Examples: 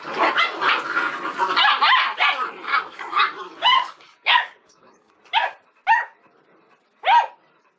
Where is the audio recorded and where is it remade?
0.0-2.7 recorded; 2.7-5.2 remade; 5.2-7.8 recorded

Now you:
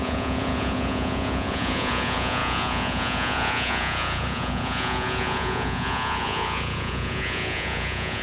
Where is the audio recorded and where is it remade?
0.0-8.2 remade

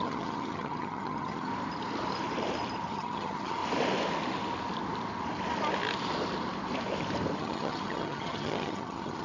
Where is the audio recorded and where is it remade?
0.0-1.5 remade; 1.5-2.9 recorded; 2.9-3.6 remade; 3.6-7.4 recorded; 7.4-9.2 remade

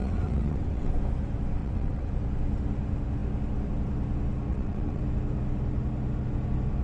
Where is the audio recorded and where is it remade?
0.0-0.9 remade; 0.9-1.6 recorded; 1.6-2.1 remade; 2.1-4.5 recorded; 4.5-5.0 remade; 5.0-6.8 recorded

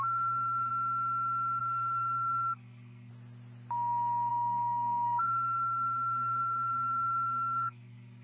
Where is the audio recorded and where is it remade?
0.0-0.7 remade; 0.7-1.6 recorded; 1.6-3.1 remade; 3.1-4.3 recorded; 4.3-8.2 remade

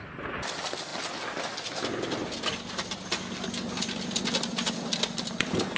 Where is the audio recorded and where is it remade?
0.0-5.8 recorded

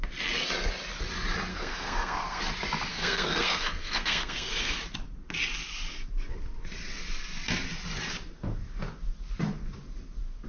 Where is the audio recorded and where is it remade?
0.0-1.5 recorded; 1.5-2.4 remade; 2.4-2.9 recorded; 2.9-4.8 remade; 4.8-10.5 recorded

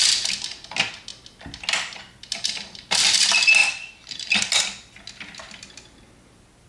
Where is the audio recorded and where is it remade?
0.0-6.7 recorded